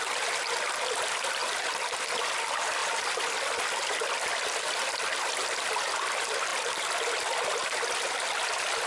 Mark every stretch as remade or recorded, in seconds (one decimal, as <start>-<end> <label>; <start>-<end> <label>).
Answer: 0.0-1.4 remade; 1.4-2.3 recorded; 2.3-8.9 remade

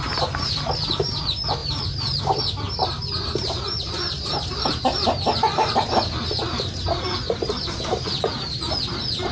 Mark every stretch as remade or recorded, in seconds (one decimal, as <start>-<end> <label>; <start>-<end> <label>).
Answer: 0.0-9.3 remade

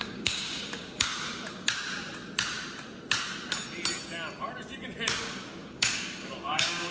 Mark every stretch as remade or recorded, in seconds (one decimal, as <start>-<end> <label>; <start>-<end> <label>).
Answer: 0.0-1.1 remade; 1.1-5.2 recorded; 5.2-6.9 remade